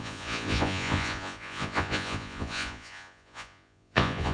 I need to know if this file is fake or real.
fake